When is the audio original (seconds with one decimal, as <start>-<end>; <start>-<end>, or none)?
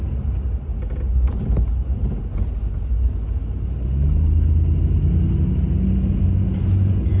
0.0-7.2